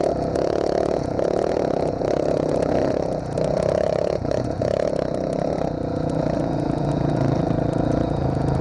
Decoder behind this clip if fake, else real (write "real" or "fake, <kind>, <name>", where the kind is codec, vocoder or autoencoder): fake, vocoder, Vocos